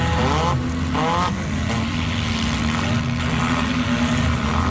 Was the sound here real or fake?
real